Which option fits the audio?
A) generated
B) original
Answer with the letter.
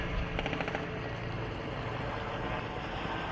B